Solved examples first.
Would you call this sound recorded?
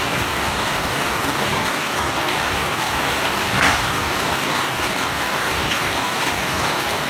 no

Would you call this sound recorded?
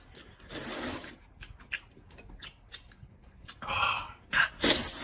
yes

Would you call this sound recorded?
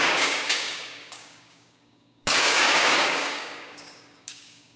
no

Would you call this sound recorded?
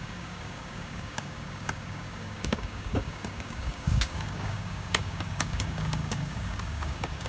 no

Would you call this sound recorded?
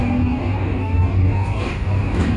no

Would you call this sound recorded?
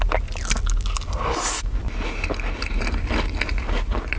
yes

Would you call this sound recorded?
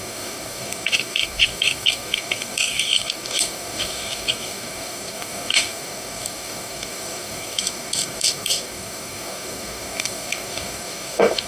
no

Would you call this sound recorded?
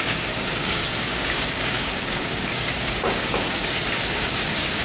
no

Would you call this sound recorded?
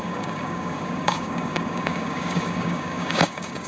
no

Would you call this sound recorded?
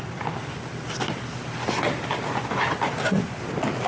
yes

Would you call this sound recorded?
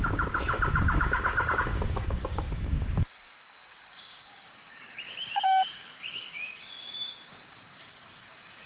no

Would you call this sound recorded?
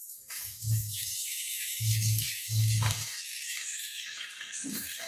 no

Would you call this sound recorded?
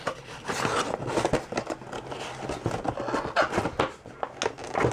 yes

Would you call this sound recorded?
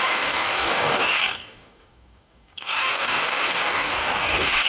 no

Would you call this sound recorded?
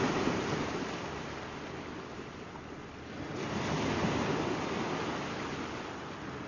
yes